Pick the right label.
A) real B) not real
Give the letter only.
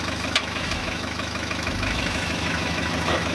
B